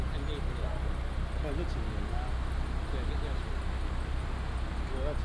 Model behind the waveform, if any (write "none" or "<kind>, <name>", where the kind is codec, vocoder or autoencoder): none